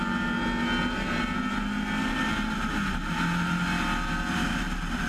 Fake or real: real